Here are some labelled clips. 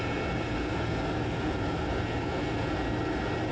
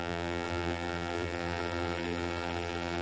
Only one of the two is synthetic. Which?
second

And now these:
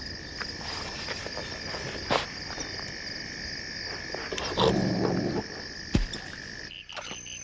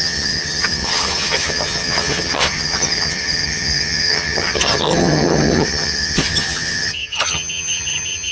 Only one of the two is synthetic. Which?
second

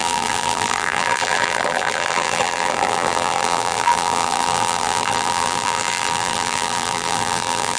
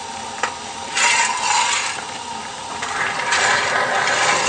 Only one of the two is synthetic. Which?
first